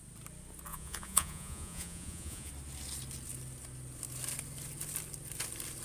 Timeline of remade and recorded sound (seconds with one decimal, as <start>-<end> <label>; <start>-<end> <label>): 0.0-0.7 recorded; 0.7-2.5 remade; 2.5-5.8 recorded